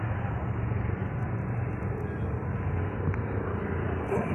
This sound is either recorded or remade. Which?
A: recorded